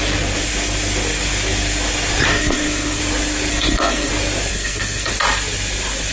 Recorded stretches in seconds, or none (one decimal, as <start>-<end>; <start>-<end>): 0.0-2.3; 3.0-3.5; 4.1-4.5; 5.1-6.1